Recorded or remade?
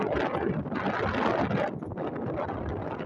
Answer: recorded